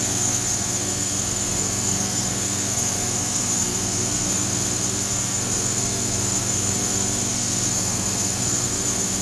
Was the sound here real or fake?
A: fake